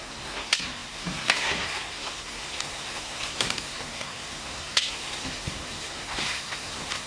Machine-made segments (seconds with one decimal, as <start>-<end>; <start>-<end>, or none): 0.0-7.1